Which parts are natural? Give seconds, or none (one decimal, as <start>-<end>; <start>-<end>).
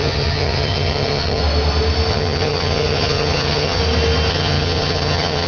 1.4-2.1; 3.8-4.3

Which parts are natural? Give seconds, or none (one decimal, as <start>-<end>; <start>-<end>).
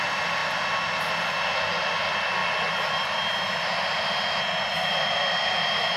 0.0-6.0